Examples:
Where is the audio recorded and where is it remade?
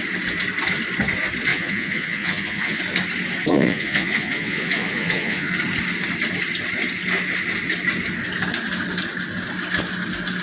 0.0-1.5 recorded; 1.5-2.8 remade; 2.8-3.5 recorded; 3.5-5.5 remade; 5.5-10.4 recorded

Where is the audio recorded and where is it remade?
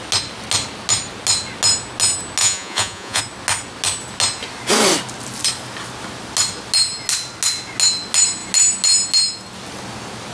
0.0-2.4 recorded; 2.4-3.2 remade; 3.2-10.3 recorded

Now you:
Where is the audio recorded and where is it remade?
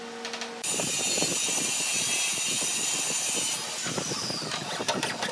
0.0-5.3 recorded